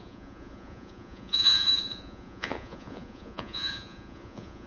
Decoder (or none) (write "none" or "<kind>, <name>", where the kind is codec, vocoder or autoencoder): vocoder, Vocos